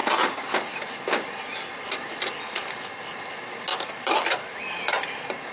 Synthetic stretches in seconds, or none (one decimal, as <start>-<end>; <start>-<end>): 3.7-4.6